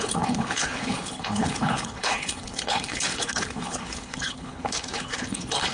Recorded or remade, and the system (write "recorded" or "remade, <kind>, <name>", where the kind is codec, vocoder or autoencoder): remade, codec, HILCodec